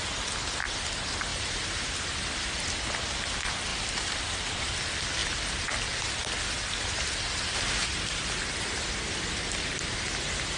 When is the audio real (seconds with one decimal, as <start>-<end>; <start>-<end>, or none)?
0.0-1.3; 1.9-3.7; 4.8-10.6